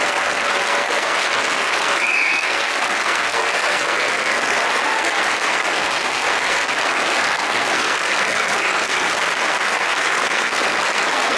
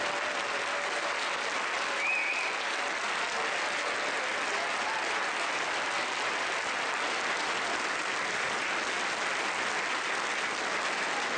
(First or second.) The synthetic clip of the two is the first